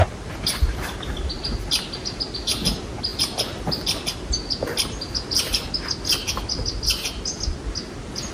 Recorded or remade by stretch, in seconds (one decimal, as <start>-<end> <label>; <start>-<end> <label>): 0.0-8.3 recorded

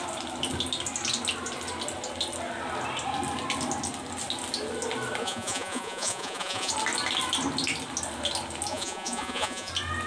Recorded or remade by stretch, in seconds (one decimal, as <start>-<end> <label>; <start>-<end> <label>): 0.0-5.2 recorded; 5.2-6.7 remade; 6.7-8.7 recorded; 8.7-9.7 remade; 9.7-10.1 recorded

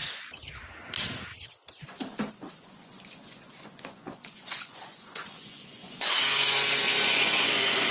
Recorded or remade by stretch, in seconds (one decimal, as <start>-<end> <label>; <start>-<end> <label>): 0.0-2.3 recorded; 2.3-7.9 remade

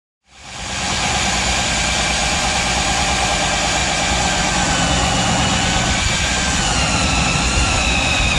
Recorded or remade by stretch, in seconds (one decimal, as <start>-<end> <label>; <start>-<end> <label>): 0.0-0.4 recorded; 0.4-1.7 remade; 1.7-2.2 recorded; 2.2-3.3 remade; 3.3-3.8 recorded; 3.8-8.4 remade

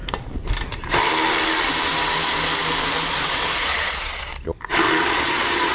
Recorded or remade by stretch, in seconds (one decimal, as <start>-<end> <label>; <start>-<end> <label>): 0.0-3.1 recorded; 3.1-4.3 remade; 4.3-5.0 recorded; 5.0-5.7 remade

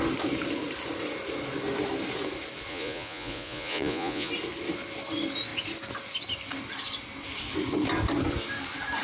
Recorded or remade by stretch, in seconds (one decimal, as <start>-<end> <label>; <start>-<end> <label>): 0.0-2.7 recorded; 2.7-4.3 remade; 4.3-9.0 recorded

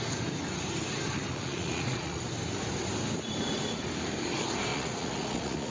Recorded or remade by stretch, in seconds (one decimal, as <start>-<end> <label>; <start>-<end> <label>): 0.0-1.3 recorded; 1.3-2.2 remade; 2.2-4.7 recorded; 4.7-5.7 remade